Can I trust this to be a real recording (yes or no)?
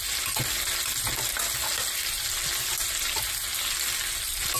yes